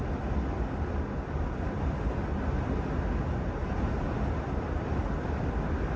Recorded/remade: recorded